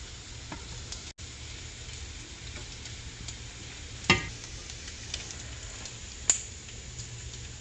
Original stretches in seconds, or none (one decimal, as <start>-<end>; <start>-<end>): 0.0-7.6